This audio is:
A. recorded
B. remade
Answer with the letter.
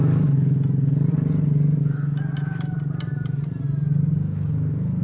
A